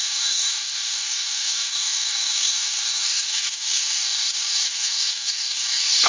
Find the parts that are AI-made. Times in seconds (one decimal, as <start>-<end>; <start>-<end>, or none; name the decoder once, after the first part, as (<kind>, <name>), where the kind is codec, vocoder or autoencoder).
0.0-6.1 (codec, DAC)